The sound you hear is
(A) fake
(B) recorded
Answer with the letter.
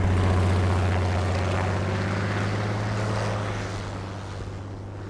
B